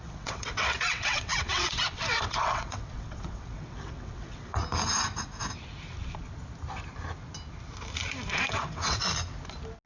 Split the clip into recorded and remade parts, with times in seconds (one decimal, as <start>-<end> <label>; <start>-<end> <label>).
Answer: 0.0-4.6 remade; 4.6-8.3 recorded; 8.3-9.0 remade; 9.0-9.9 recorded